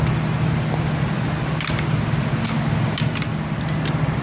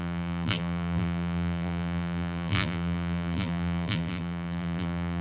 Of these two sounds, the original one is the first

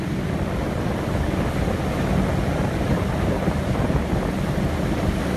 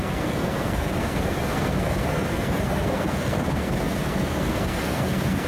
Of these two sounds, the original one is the first